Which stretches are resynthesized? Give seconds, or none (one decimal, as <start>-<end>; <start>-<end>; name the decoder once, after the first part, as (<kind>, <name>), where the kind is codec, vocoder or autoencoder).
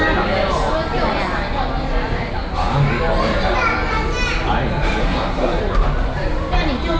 5.0-5.6 (codec, SNAC)